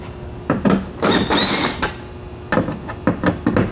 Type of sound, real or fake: real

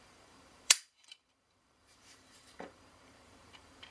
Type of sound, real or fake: fake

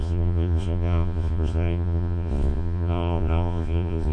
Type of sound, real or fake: fake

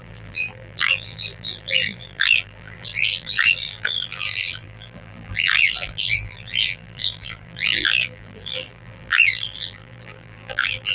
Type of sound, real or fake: fake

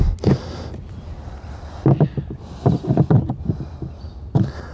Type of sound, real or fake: real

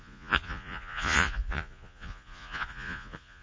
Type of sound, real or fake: fake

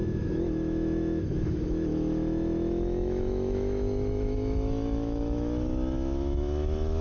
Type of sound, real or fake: fake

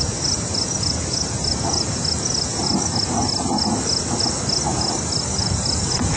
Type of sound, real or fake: real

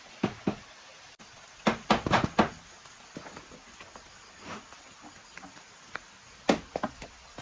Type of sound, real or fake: real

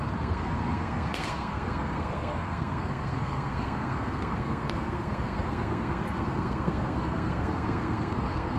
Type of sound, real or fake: fake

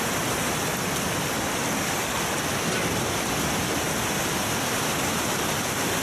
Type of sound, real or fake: real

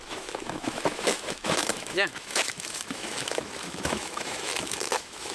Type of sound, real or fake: fake